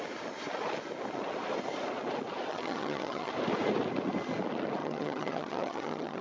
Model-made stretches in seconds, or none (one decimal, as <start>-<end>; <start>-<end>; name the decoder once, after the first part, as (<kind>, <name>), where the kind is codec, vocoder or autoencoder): 2.5-3.3 (vocoder, HiFi-GAN); 4.8-6.2